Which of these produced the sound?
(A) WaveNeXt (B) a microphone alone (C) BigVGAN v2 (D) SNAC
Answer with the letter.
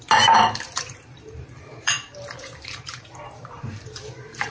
C